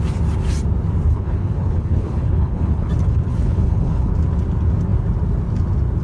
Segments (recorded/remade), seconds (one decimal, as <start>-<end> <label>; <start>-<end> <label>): 0.0-1.1 recorded; 1.1-2.9 remade; 2.9-3.3 recorded; 3.3-4.1 remade; 4.1-6.0 recorded